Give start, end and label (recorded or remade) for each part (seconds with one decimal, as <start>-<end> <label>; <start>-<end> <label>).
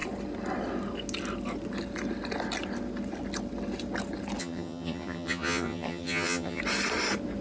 0.0-4.4 recorded; 4.4-6.6 remade; 6.6-7.4 recorded